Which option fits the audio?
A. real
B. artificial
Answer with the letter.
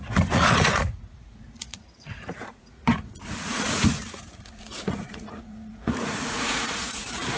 B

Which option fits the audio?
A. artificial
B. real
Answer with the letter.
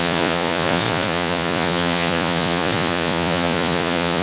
A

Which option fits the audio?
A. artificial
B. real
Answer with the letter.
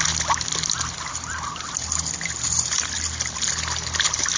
B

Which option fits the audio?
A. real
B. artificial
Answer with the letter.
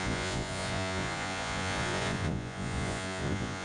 B